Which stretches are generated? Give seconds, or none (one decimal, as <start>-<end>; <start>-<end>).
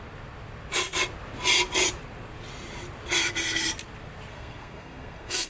4.3-5.5